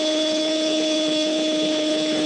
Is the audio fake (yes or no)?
yes